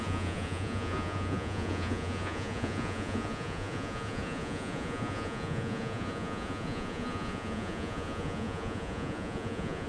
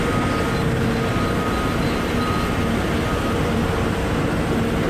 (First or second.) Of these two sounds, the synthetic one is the first